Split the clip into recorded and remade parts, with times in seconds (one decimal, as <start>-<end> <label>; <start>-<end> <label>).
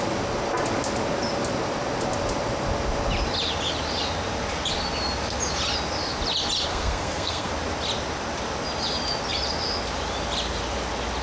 0.0-6.7 recorded; 6.7-7.5 remade; 7.5-11.2 recorded